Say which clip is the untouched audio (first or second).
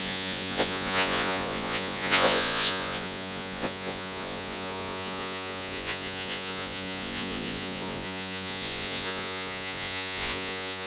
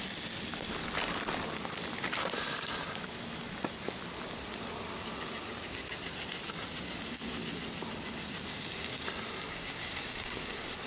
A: second